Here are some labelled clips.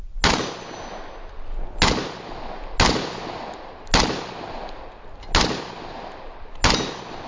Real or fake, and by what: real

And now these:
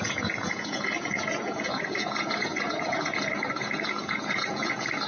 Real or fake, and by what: fake, vocoder, Vocos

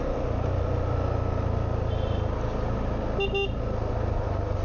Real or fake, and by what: real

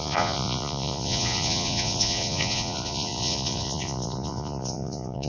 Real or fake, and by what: fake, vocoder, Vocos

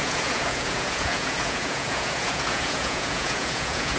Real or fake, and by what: fake, vocoder, Vocos